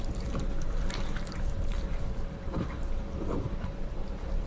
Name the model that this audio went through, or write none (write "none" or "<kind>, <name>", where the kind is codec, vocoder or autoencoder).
vocoder, BigVGAN v2